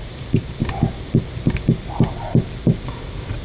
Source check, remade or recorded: recorded